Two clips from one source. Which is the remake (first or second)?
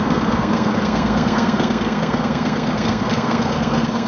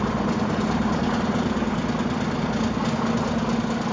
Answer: first